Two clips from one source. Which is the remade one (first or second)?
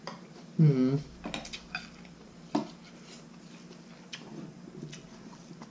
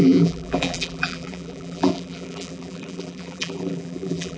second